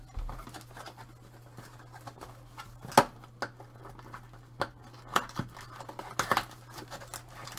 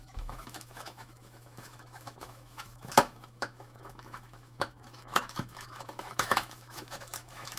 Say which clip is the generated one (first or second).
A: second